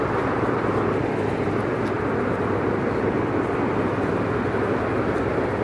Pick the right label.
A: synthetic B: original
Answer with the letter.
B